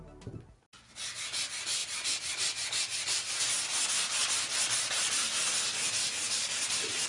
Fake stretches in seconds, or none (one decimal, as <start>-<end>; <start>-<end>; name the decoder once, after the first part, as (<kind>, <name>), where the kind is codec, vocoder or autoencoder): none